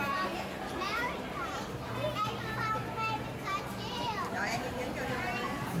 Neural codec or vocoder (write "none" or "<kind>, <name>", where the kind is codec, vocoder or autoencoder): vocoder, BigVGAN v2